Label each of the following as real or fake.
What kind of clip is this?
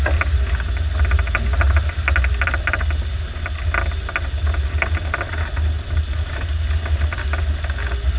real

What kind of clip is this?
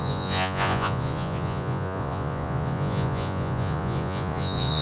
fake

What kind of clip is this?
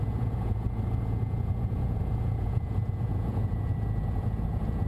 fake